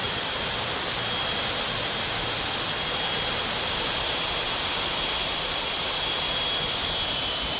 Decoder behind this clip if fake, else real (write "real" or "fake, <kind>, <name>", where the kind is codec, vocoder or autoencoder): real